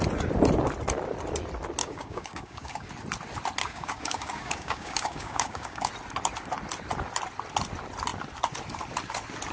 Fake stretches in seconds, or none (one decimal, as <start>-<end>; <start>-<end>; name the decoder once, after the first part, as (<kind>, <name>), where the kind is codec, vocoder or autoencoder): 1.8-2.9 (codec, DAC); 3.6-5.9